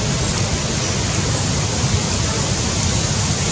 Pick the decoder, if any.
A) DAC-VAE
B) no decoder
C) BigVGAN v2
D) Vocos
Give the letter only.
B